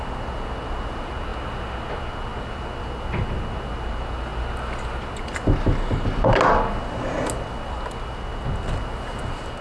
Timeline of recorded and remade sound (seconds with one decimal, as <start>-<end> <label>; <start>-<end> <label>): 0.0-9.6 recorded